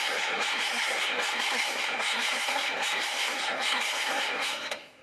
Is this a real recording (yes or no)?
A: no